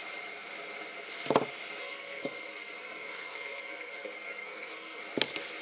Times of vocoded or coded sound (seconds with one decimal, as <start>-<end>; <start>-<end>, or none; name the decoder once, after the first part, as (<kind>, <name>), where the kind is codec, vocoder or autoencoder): 1.8-5.0 (codec, SNAC)

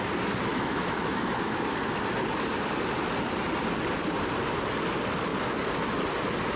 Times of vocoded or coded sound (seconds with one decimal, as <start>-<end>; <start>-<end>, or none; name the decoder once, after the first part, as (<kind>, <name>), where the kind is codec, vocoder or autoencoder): 0.5-1.7 (autoencoder, DAC-VAE)

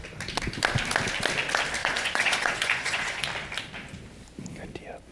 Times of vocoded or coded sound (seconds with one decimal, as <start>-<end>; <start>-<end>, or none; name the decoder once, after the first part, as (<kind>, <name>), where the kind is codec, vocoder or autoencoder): 1.8-3.2 (vocoder, Vocos)

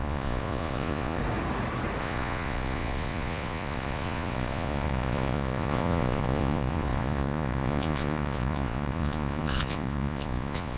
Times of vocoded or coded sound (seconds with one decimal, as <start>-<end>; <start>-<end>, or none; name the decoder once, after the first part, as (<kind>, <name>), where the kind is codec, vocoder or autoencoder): 0.0-1.2 (vocoder, Vocos); 2.0-10.8

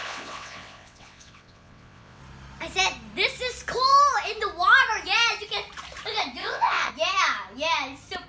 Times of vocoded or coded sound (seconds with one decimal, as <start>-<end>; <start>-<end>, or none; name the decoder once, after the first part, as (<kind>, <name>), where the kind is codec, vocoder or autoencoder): 0.0-2.2 (vocoder, WaveNeXt); 6.4-6.9

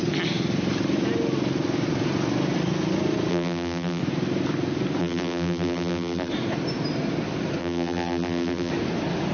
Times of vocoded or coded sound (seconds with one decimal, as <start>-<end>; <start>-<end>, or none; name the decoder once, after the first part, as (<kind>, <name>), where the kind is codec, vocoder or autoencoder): 3.3-4.0 (vocoder, BigVGAN v2); 5.0-6.3; 7.6-8.7

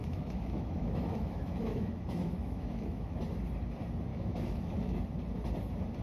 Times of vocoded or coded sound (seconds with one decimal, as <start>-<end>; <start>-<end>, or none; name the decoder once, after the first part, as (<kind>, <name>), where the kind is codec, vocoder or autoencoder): 0.0-3.2 (autoencoder, DAC-VAE); 4.1-5.0

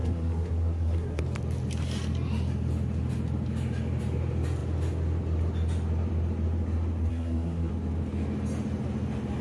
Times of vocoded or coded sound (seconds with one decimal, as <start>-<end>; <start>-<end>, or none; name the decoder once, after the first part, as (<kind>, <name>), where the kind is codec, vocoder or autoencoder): 0.0-1.2 (codec, SNAC); 7.1-7.7